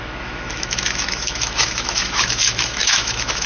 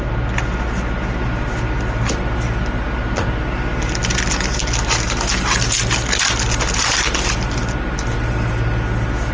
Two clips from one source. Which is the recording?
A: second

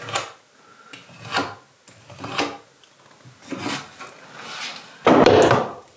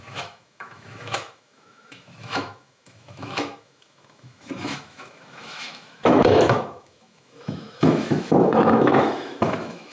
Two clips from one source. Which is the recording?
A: first